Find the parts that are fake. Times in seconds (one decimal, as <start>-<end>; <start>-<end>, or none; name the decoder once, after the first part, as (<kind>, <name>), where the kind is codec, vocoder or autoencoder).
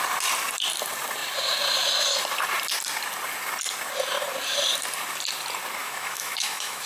5.8-6.9 (autoencoder, DAC-VAE)